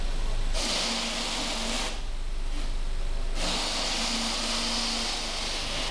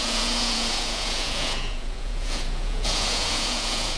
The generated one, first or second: second